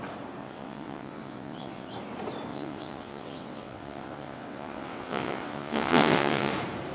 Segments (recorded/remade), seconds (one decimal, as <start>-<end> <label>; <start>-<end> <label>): 0.0-0.4 recorded; 0.4-1.9 remade; 1.9-2.5 recorded; 2.5-6.5 remade; 6.5-6.9 recorded